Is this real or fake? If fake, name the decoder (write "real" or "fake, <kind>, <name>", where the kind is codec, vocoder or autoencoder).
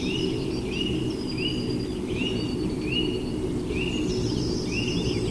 real